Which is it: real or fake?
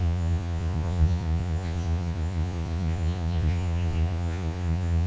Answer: fake